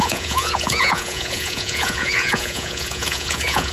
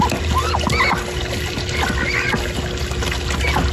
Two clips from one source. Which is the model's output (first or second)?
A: first